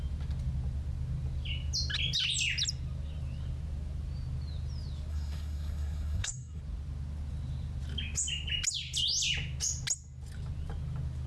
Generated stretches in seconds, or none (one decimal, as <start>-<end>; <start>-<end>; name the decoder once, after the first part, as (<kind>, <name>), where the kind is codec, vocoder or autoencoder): 5.1-6.6 (codec, SNAC)